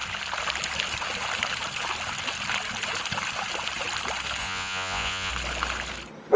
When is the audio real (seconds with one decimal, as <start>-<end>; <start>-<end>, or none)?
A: 0.0-4.4; 5.3-6.4